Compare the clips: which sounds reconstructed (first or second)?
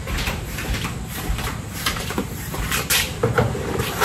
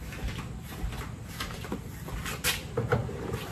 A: first